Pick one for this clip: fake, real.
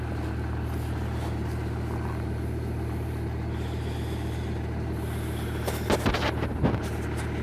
real